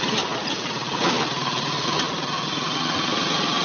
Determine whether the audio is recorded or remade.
recorded